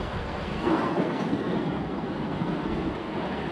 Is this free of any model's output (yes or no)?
no